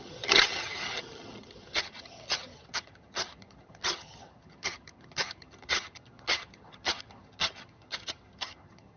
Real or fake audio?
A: fake